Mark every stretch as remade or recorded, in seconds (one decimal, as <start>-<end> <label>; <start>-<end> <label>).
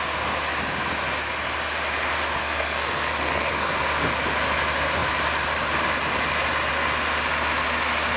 0.0-2.4 recorded; 2.4-3.7 remade; 3.7-8.2 recorded